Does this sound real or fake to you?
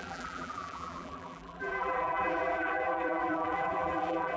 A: fake